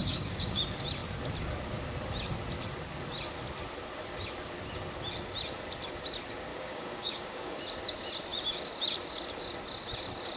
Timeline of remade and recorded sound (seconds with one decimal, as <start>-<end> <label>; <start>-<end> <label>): 0.0-0.6 remade; 0.6-6.5 recorded; 6.5-7.6 remade; 7.6-10.4 recorded